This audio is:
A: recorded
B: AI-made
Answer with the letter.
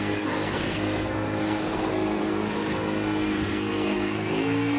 B